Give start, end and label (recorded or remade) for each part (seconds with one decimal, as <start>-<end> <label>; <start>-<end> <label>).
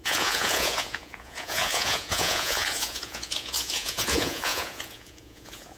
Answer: 0.0-5.8 remade